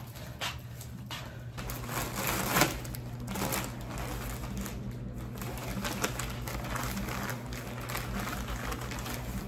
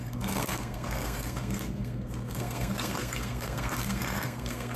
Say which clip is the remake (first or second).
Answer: second